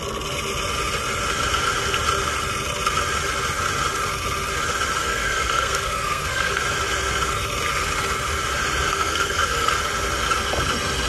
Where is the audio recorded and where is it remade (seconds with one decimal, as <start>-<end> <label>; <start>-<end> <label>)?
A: 0.0-5.0 recorded; 5.0-6.6 remade; 6.6-8.9 recorded; 8.9-9.7 remade; 9.7-11.1 recorded